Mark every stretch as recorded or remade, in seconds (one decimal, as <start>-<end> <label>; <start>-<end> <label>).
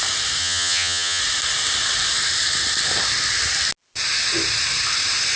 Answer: 0.0-0.4 recorded; 0.4-1.2 remade; 1.2-5.4 recorded